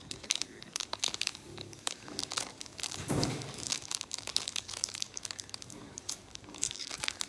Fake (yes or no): yes